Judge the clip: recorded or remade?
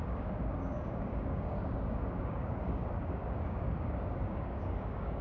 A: remade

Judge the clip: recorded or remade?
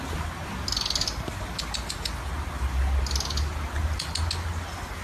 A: recorded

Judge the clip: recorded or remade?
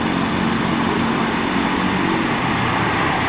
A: recorded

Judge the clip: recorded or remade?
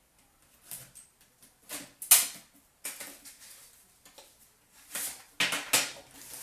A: recorded